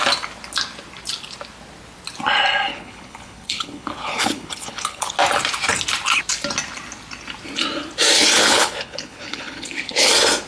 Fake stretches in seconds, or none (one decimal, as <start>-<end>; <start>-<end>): 2.7-5.1; 8.4-10.1